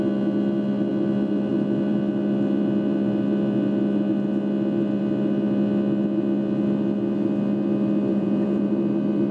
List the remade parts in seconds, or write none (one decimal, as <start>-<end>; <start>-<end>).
8.1-8.7